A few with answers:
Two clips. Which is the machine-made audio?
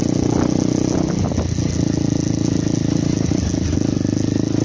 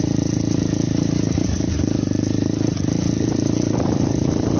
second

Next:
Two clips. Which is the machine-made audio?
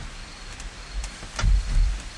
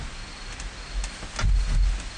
first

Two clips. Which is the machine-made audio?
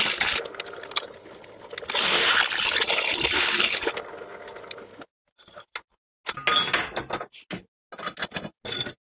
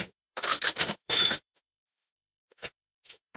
second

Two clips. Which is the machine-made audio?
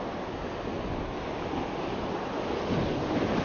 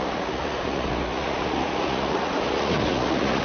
second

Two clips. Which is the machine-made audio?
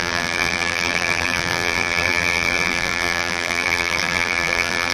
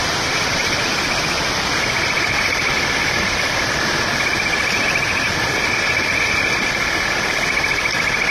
first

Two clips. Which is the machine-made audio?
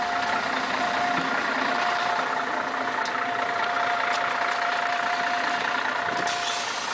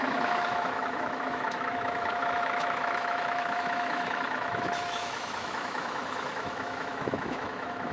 second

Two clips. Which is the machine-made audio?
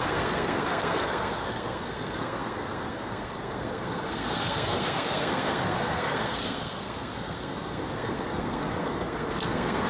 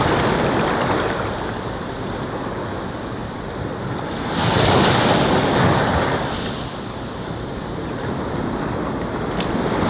first